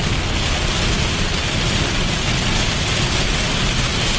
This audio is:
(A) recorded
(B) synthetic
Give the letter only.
A